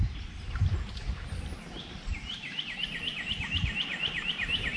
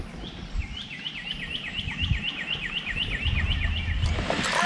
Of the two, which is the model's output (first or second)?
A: first